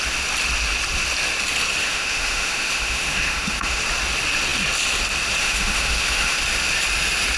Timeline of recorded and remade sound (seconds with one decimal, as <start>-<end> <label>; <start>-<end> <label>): 0.0-1.8 recorded; 1.8-3.8 remade; 3.8-5.4 recorded; 5.4-6.4 remade; 6.4-7.4 recorded